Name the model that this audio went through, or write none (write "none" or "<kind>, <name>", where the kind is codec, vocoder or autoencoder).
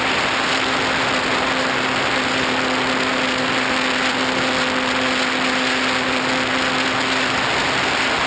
none